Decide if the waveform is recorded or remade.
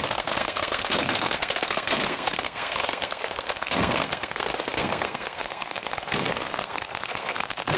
remade